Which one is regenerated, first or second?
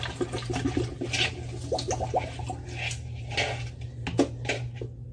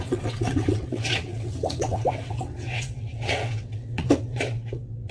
second